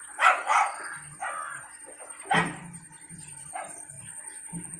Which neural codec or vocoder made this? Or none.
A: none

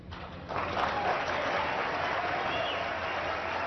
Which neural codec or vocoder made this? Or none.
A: none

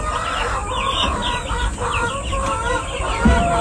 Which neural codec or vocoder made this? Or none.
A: none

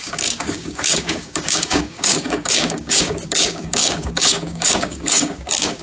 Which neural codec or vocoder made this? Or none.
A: codec, DAC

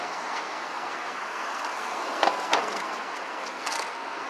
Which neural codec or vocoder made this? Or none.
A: codec, SNAC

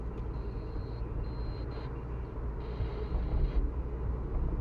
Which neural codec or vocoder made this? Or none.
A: none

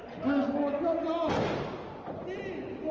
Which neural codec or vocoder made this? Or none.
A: none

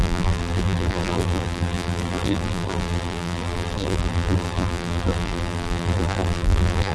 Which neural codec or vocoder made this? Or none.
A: vocoder, BigVGAN v2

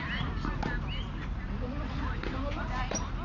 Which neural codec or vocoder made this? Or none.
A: none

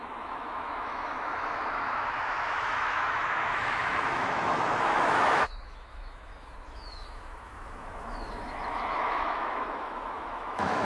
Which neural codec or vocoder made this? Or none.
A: autoencoder, DAC-VAE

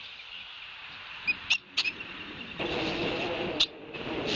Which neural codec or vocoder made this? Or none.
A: none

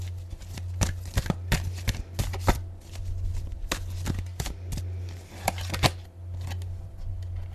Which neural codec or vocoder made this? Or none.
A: none